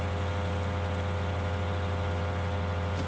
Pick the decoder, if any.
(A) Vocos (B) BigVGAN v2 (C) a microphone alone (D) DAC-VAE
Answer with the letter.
C